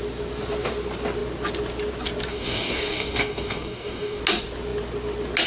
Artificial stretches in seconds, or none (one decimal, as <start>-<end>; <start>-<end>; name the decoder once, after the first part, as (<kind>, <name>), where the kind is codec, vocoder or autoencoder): 2.3-4.2 (codec, DAC)